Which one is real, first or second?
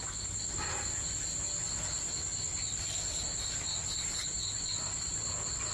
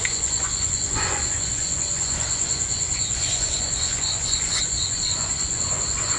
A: first